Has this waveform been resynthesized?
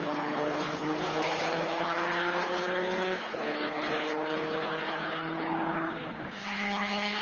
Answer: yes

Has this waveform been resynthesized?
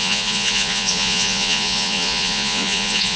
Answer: yes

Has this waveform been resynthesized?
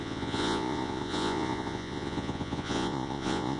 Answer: yes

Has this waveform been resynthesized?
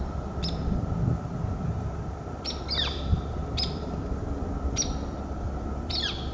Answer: yes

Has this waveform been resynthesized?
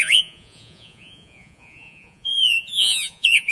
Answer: yes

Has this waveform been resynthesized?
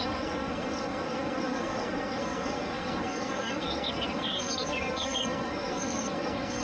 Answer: yes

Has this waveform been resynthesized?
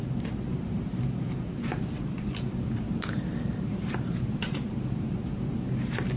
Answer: yes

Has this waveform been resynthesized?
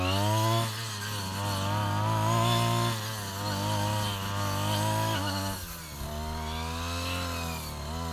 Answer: no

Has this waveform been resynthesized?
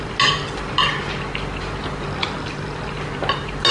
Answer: no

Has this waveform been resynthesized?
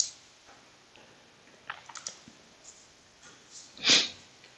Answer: no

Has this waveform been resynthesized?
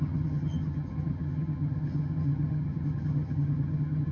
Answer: yes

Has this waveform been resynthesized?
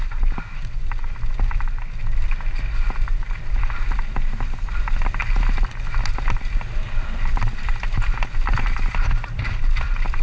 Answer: no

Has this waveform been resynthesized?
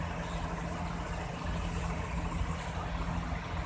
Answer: no